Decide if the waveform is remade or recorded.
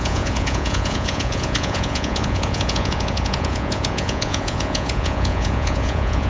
remade